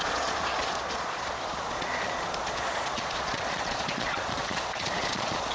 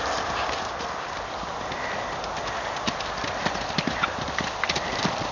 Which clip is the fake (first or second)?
first